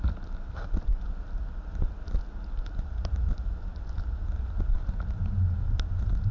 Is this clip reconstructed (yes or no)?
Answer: no